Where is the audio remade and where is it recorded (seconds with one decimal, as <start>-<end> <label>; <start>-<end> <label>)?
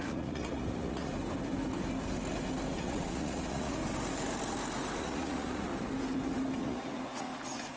0.0-1.1 remade; 1.1-2.7 recorded; 2.7-3.8 remade; 3.8-5.0 recorded; 5.0-5.7 remade; 5.7-6.6 recorded; 6.6-7.8 remade